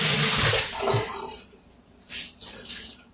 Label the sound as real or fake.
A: fake